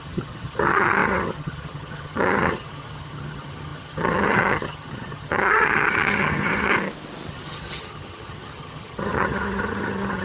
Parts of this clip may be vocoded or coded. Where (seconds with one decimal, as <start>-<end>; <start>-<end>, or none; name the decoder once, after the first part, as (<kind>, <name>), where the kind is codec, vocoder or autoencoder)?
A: 0.0-6.7 (vocoder, HiFi-GAN); 7.3-10.2